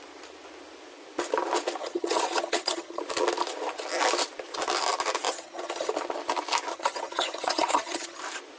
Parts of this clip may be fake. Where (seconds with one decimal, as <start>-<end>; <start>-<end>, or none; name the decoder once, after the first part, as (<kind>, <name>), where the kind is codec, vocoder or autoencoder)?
1.8-3.0 (vocoder, HiFi-GAN); 5.3-5.9; 6.7-8.2